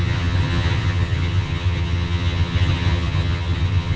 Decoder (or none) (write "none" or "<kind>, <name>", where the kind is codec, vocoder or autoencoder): vocoder, HiFi-GAN